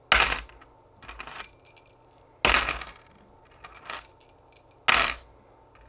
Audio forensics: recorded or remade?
recorded